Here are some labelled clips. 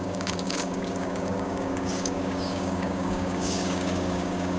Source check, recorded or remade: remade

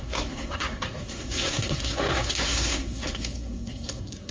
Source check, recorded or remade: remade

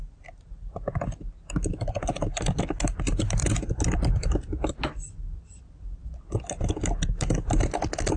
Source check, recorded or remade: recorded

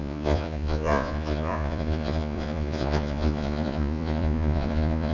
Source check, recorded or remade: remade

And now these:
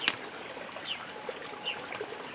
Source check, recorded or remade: recorded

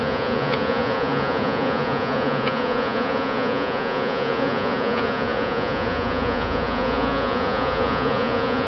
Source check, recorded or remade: remade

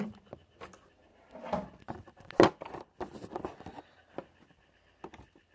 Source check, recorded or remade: recorded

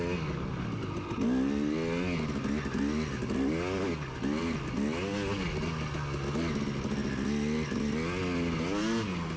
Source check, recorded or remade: recorded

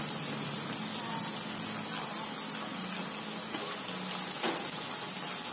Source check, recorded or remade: recorded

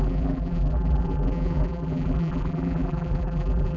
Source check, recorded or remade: remade